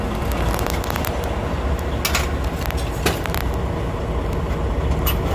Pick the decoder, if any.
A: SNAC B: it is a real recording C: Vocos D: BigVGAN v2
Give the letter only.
B